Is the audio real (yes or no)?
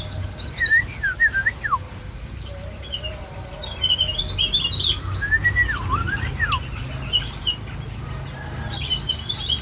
yes